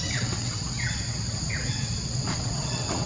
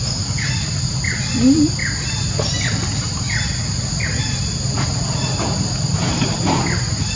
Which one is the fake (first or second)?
first